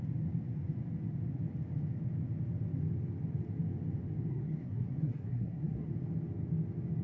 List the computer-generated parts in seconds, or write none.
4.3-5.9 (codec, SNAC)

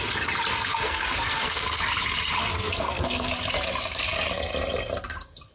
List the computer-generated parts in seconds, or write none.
0.5-1.8 (codec, SNAC); 2.4-3.3

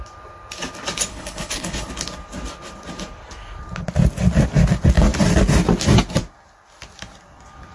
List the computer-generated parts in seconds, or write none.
1.1-1.9 (codec, HILCodec)

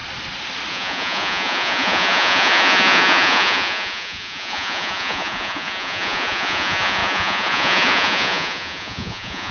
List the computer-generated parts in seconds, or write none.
0.7-9.5 (vocoder, Vocos)

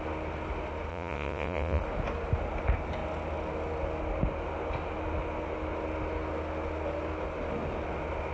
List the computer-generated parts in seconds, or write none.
0.9-1.8 (vocoder, Vocos)